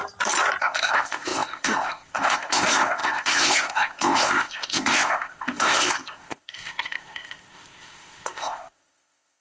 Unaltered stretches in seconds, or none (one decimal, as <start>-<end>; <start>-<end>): 0.0-0.6